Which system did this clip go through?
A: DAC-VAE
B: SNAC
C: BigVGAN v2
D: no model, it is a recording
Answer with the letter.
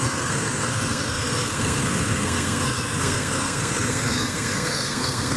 B